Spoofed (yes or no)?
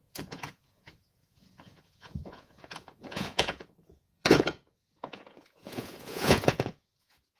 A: yes